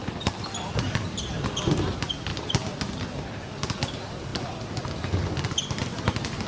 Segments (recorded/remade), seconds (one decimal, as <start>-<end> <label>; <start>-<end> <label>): 0.0-6.5 recorded